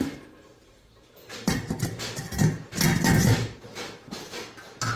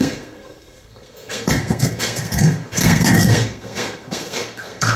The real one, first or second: first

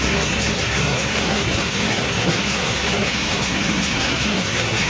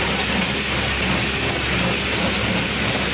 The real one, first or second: second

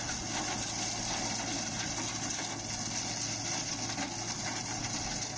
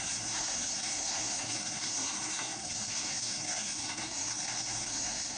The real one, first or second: first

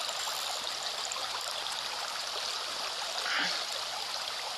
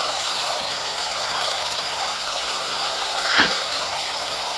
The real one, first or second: first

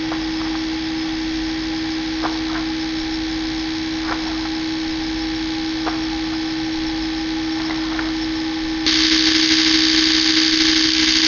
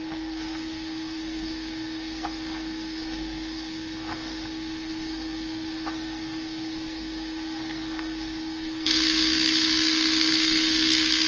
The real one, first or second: first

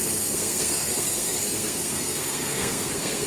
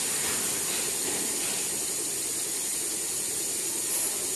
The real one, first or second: second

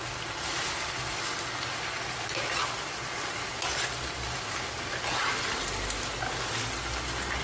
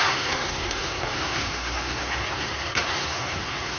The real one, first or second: first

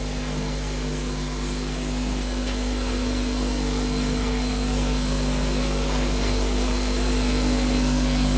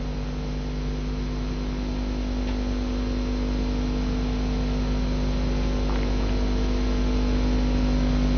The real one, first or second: second